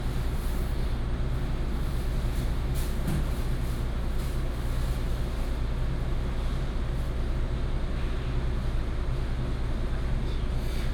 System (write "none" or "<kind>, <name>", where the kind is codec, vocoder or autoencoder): none